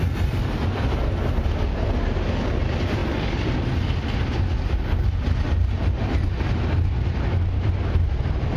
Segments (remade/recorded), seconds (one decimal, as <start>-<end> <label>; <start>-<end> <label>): 0.0-3.0 recorded; 3.0-3.7 remade; 3.7-8.6 recorded